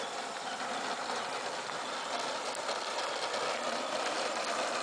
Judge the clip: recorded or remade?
recorded